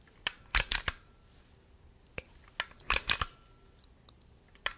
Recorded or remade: recorded